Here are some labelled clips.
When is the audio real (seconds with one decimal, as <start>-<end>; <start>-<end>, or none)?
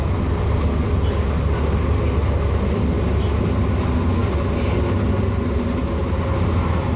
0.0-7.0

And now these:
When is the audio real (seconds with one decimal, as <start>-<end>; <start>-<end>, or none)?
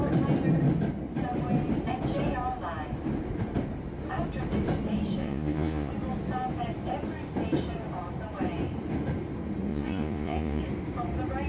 0.0-5.2; 5.9-9.7; 10.6-11.5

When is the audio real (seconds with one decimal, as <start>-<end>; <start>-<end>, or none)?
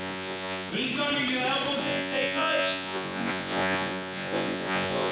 0.7-1.8